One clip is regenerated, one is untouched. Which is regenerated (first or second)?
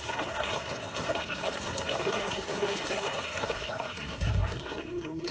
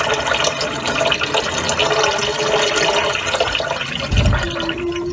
first